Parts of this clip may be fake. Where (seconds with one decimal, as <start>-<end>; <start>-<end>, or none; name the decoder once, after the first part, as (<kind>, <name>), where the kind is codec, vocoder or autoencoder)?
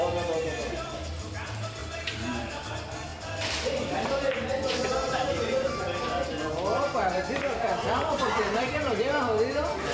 1.8-2.7 (vocoder, BigVGAN v2); 5.0-9.0